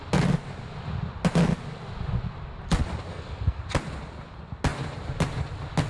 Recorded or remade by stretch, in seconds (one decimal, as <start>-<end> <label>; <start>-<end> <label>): 0.0-3.1 recorded; 3.1-3.6 remade; 3.6-5.9 recorded